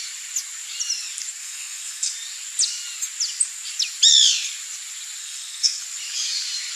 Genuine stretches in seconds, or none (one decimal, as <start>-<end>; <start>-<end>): 0.0-1.4; 2.1-5.2; 5.8-6.8